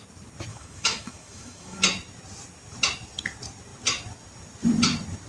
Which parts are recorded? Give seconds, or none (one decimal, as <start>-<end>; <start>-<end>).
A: 0.0-0.5; 1.8-5.3